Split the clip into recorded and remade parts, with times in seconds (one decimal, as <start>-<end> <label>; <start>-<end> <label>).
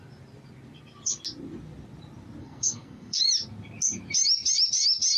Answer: 0.0-2.4 recorded; 2.4-3.2 remade; 3.2-5.2 recorded